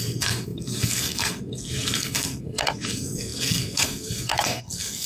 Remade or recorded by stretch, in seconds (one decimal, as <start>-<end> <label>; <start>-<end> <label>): 0.0-5.1 remade